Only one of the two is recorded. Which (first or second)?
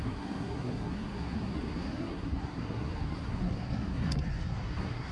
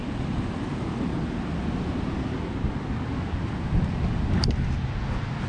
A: second